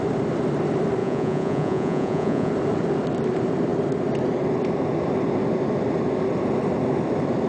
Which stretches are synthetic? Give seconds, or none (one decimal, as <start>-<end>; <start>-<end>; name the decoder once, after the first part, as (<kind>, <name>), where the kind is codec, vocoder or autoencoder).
1.0-2.5 (vocoder, Vocos)